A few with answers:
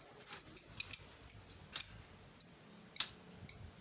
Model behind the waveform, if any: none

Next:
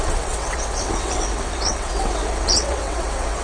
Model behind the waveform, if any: vocoder, WaveNeXt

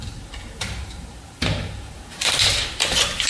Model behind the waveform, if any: vocoder, BigVGAN v2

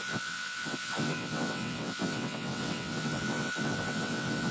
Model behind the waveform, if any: vocoder, WaveNeXt